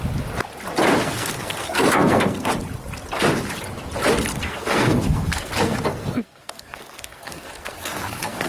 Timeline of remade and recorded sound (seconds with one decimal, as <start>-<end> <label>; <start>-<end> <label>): 0.0-1.0 recorded; 1.0-2.5 remade; 2.5-4.3 recorded; 4.3-8.5 remade